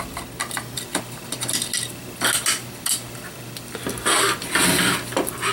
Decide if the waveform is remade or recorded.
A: recorded